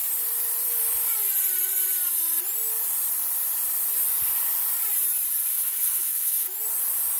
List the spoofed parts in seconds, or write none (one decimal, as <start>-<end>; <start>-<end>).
5.5-6.6